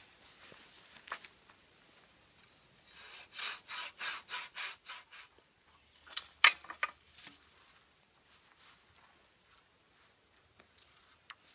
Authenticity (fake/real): real